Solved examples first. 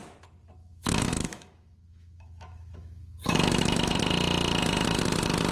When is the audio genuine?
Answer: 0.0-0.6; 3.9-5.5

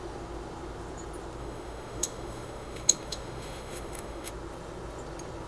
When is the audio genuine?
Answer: 0.0-1.4; 4.3-5.5